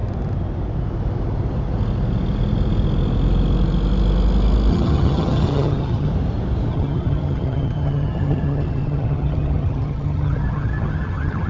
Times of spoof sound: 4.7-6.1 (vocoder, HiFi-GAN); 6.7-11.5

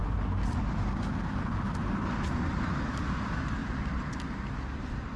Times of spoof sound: none

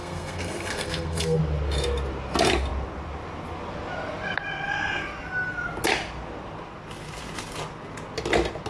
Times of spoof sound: 0.0-1.4 (codec, SNAC)

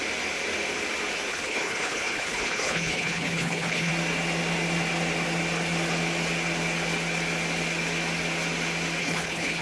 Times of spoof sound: 1.3-3.9 (codec, HILCodec); 9.0-9.6

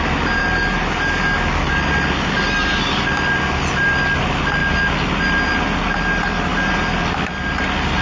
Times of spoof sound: 0.4-1.8 (codec, DAC)

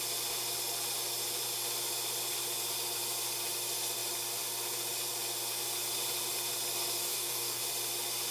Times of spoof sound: 7.0-7.6 (codec, DAC)

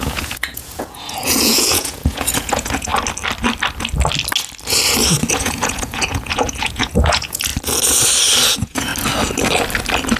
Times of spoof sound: 0.0-2.9 (vocoder, Vocos); 5.3-7.5; 8.5-8.9

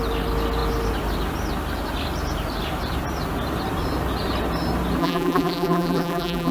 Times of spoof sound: 5.0-6.5 (vocoder, BigVGAN v2)